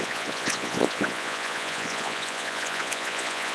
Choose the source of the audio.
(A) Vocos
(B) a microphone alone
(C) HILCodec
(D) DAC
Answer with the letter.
A